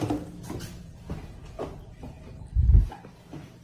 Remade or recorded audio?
recorded